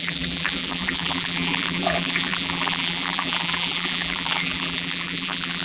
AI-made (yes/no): yes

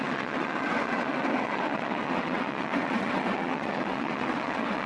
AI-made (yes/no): yes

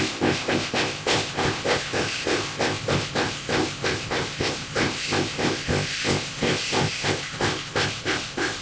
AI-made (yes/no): yes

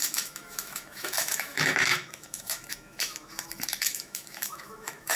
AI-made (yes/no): yes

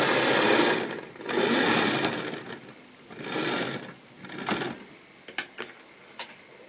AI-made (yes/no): no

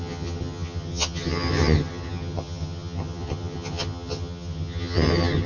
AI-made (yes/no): yes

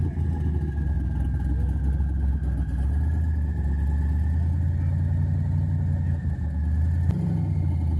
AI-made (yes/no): no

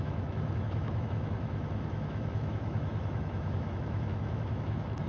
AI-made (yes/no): yes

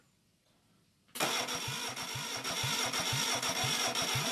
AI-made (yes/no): no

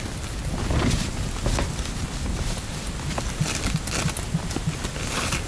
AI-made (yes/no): no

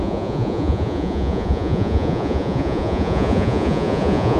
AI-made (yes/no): yes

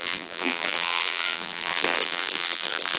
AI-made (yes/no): yes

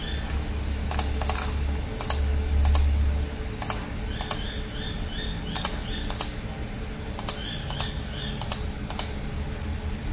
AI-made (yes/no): no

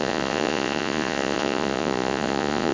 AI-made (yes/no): yes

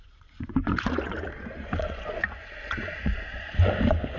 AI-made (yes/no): yes